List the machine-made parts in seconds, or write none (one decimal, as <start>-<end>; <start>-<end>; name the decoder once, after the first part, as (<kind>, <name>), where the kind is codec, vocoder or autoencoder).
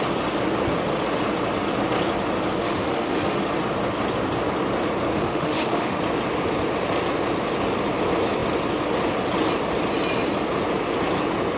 2.6-3.4 (autoencoder, DAC-VAE); 5.1-6.0